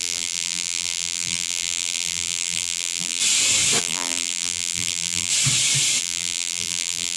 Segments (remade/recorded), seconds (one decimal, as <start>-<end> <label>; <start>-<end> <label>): 0.0-3.2 remade; 3.2-3.8 recorded; 3.8-5.3 remade; 5.3-6.0 recorded; 6.0-7.2 remade